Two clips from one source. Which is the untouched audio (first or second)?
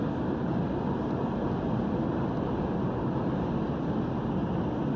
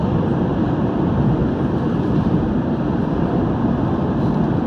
first